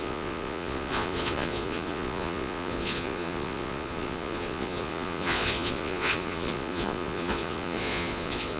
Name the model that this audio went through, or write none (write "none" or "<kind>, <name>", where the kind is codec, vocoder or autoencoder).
vocoder, Vocos